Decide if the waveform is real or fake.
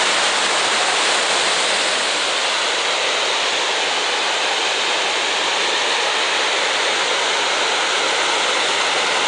real